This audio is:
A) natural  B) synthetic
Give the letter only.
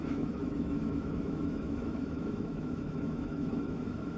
B